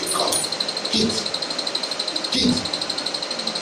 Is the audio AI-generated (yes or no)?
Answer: no